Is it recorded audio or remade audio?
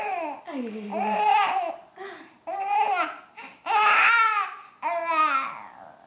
recorded